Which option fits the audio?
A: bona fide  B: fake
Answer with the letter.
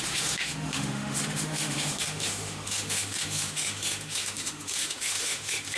B